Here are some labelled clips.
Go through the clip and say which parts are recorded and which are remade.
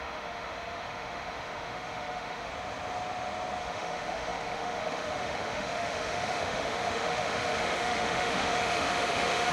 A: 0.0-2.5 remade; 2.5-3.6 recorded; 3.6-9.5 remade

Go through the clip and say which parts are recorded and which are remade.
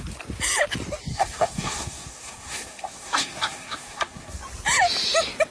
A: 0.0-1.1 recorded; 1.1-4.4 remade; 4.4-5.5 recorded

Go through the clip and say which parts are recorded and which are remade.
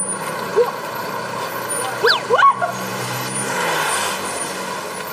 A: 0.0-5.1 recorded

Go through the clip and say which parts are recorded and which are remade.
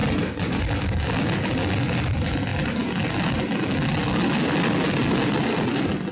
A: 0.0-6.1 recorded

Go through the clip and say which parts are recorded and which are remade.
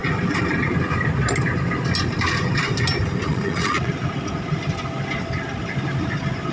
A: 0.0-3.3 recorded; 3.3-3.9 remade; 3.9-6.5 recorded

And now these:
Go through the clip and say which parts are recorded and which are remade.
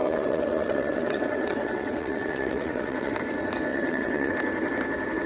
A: 0.0-3.2 remade; 3.2-3.7 recorded; 3.7-4.3 remade; 4.3-5.3 recorded